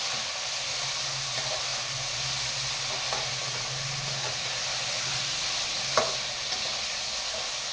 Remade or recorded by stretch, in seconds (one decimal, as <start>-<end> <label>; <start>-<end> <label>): 0.0-7.7 recorded